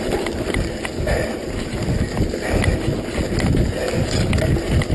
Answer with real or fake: real